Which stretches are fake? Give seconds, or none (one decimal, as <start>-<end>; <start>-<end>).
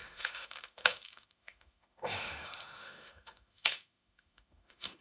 0.0-5.0